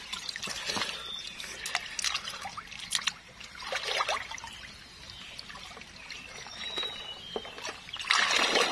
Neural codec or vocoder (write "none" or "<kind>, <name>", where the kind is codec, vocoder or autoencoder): none